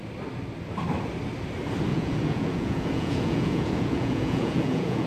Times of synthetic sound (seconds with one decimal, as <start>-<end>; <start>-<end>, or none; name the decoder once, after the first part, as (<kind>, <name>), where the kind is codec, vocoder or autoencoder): 1.9-5.1 (vocoder, Vocos)